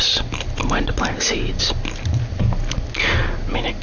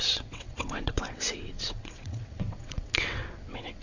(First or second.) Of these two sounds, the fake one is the second